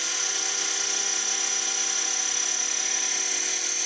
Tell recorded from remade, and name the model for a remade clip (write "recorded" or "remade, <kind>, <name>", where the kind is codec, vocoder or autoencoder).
recorded